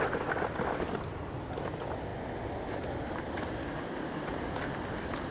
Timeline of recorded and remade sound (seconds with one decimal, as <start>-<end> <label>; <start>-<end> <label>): 0.0-5.3 recorded